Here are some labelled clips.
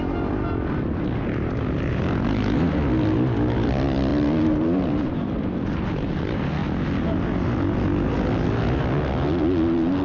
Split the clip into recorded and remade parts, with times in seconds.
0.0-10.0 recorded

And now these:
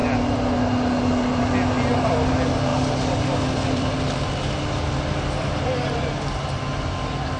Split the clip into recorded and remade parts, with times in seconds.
0.0-2.7 recorded; 2.7-7.4 remade

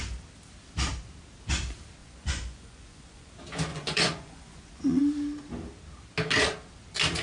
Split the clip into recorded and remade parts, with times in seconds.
0.0-2.0 recorded; 2.0-3.3 remade; 3.3-3.7 recorded; 3.7-5.0 remade; 5.0-7.2 recorded

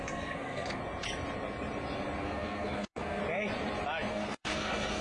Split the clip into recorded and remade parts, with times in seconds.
0.0-0.8 remade; 0.8-2.2 recorded; 2.2-3.2 remade; 3.2-4.1 recorded; 4.1-5.0 remade